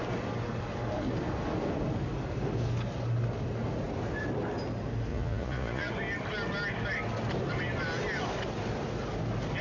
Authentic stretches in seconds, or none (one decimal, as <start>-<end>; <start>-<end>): 0.0-5.1; 5.9-9.6